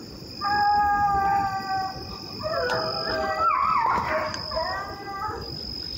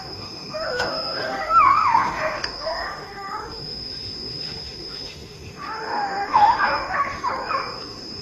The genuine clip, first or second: first